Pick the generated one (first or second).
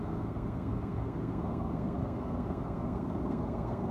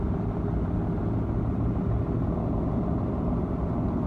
first